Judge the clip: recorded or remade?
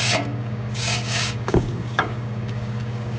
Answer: remade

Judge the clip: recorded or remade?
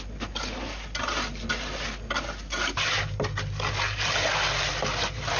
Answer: recorded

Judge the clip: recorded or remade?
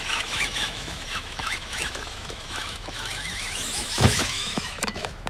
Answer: remade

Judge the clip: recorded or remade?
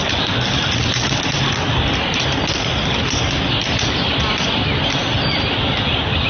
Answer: recorded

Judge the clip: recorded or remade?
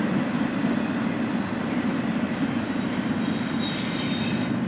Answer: remade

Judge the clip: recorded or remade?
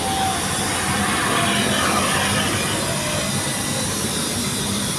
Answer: recorded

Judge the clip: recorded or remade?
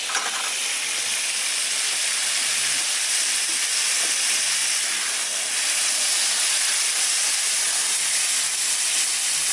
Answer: recorded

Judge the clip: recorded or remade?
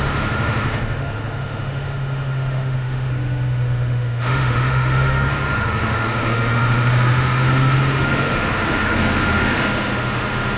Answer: remade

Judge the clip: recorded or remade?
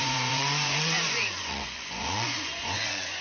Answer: remade